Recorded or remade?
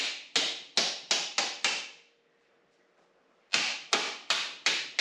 recorded